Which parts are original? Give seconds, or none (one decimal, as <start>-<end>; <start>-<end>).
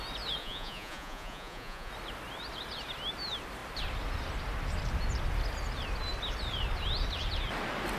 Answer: 0.0-0.4; 1.9-8.0